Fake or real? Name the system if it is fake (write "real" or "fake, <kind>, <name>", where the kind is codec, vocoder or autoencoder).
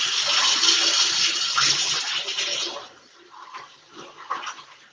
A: real